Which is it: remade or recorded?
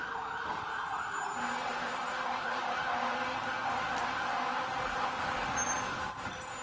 recorded